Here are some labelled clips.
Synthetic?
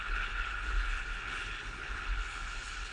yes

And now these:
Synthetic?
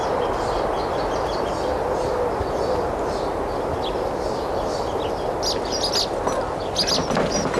no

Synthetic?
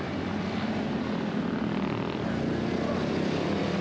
no